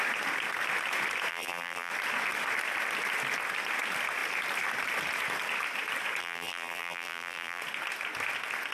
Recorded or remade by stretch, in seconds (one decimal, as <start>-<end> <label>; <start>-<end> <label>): 0.0-1.3 recorded; 1.3-1.9 remade; 1.9-6.2 recorded; 6.2-7.6 remade; 7.6-8.7 recorded